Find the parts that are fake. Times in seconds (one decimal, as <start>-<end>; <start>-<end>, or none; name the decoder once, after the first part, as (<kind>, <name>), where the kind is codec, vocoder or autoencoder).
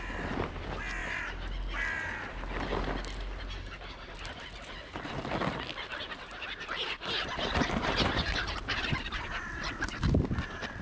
none